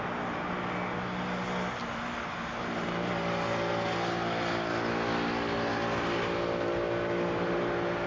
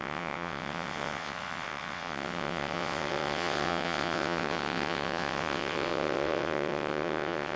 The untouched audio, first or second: first